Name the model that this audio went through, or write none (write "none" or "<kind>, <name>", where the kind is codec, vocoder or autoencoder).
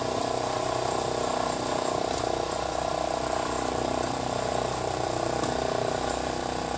none